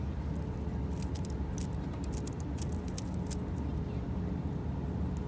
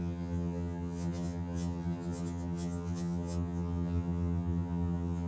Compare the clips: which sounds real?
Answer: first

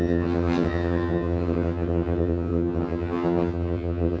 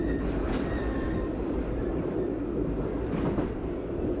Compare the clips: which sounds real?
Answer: second